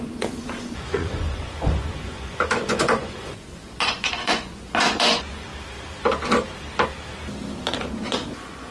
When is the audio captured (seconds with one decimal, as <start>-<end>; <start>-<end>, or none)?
5.5-7.8

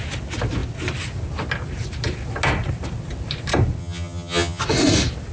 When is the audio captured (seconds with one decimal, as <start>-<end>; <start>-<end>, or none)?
0.0-3.8; 4.6-5.3

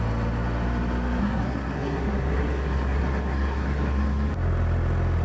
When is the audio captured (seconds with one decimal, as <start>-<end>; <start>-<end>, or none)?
0.0-1.2; 4.3-5.2

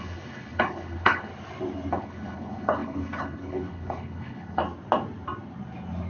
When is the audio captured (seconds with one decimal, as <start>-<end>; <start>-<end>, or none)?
1.3-1.9; 4.6-6.1

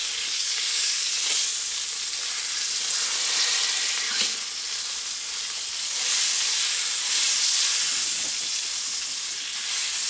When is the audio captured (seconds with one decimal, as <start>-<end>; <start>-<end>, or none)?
1.1-10.1

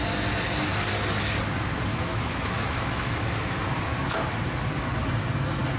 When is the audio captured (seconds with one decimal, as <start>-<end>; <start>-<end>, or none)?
0.0-1.9; 3.6-5.8

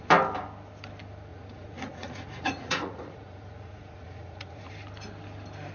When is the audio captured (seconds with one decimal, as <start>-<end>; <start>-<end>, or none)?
0.0-1.3; 4.7-5.7

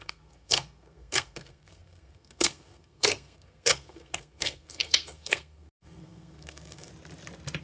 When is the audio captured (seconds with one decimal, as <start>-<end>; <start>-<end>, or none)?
6.9-7.6